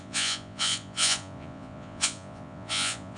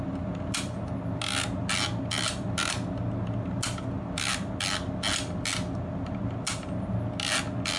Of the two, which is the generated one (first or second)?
first